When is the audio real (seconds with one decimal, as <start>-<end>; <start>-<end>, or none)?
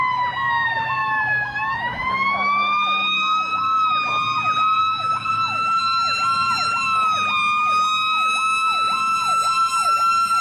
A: 0.0-1.0; 3.9-4.8; 5.8-10.4